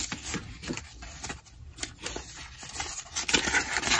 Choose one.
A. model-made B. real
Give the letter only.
B